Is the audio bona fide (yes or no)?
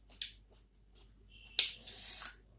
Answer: yes